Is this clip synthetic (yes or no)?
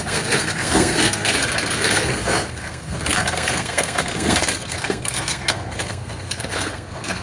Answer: yes